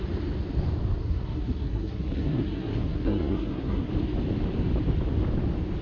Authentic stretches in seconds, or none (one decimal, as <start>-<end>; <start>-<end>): 0.0-1.0; 3.9-5.8